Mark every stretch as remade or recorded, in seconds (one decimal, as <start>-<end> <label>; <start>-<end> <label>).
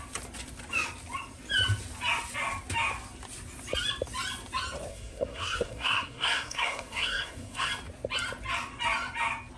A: 0.0-4.9 recorded; 4.9-7.7 remade; 7.7-9.6 recorded